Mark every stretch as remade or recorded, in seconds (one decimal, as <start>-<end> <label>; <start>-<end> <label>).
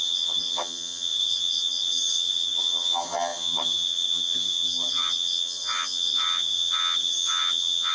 0.0-7.9 remade